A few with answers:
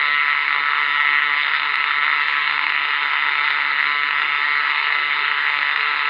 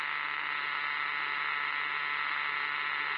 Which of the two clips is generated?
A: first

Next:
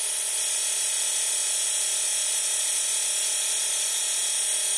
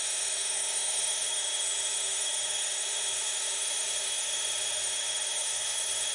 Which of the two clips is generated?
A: second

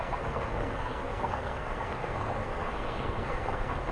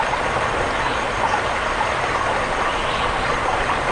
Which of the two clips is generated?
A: first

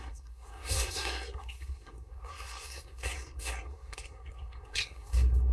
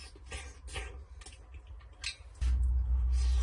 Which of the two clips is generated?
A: first